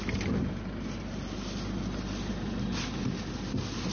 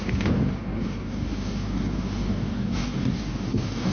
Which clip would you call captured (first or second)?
first